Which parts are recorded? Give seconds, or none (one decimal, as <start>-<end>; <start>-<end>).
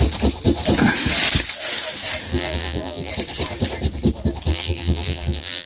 0.0-2.3; 3.1-4.5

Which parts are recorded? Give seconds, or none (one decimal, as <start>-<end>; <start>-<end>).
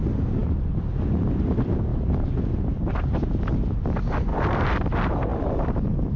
0.0-1.9; 3.4-4.3; 4.8-5.3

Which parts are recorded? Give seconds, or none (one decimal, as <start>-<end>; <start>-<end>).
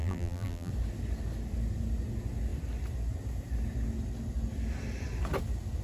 0.7-5.8